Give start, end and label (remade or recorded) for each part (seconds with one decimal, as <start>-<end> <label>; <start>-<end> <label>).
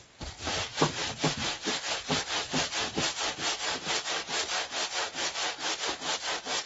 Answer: 0.0-0.7 recorded; 0.7-4.7 remade; 4.7-5.4 recorded; 5.4-5.9 remade; 5.9-6.7 recorded